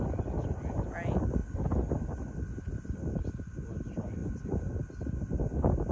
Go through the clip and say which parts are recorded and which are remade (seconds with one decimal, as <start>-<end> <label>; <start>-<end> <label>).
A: 0.0-5.9 recorded